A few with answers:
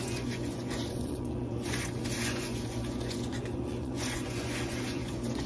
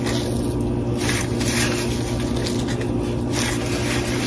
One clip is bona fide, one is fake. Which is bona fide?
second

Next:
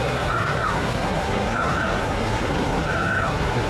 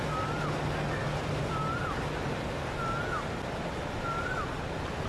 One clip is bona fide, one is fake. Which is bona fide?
second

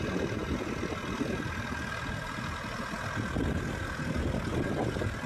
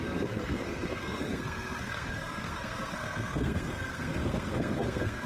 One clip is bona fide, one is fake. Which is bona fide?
first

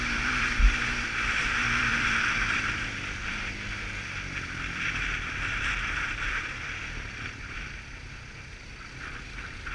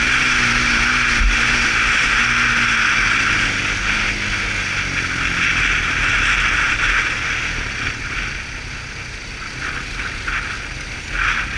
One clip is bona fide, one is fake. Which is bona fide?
second